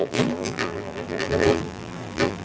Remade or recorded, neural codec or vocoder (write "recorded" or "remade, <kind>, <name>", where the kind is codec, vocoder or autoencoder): remade, vocoder, BigVGAN v2